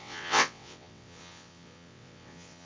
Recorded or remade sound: remade